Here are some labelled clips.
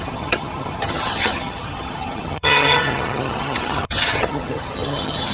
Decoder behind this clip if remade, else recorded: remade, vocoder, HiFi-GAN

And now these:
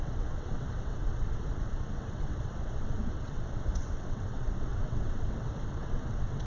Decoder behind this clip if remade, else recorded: remade, vocoder, WaveNeXt